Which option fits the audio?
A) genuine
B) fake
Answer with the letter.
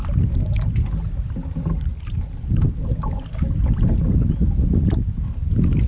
A